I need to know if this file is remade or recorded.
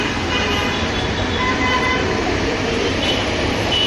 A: remade